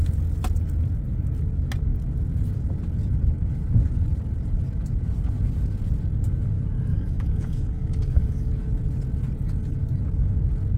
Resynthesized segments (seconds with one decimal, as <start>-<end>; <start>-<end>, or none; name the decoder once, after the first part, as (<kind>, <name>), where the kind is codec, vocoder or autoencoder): 6.9-8.5 (codec, DAC)